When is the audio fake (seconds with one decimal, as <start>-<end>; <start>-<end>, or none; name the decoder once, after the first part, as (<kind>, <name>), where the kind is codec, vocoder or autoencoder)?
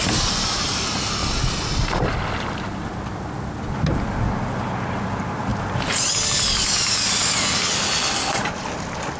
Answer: 0.0-1.2 (vocoder, BigVGAN v2); 4.9-5.5